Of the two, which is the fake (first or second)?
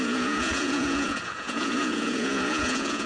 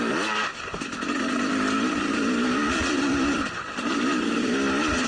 first